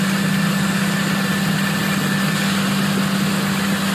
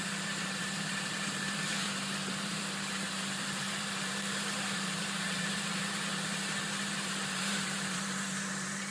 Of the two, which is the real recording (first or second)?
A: first